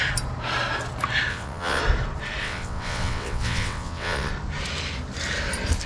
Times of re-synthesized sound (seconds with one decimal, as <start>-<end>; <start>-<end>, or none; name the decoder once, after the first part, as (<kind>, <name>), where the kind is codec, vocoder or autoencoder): 1.3-1.8 (vocoder, WaveNeXt); 2.4-4.3